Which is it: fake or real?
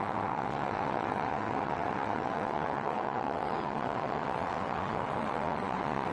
fake